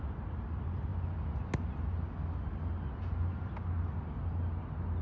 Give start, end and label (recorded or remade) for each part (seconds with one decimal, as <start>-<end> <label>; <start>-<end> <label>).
0.0-5.0 recorded